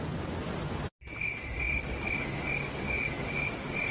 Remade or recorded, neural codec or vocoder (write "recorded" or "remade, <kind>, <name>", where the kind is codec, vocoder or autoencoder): recorded